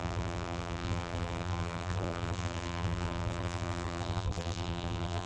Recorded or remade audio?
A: remade